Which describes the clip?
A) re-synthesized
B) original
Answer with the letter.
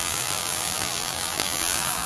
A